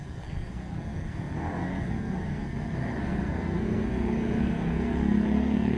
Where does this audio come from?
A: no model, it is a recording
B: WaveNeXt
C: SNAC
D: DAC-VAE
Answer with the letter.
C